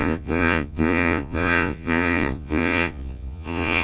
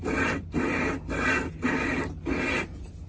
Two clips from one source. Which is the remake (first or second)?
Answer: first